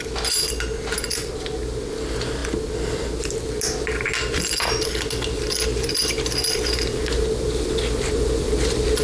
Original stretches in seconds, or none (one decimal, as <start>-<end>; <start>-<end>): 0.0-9.0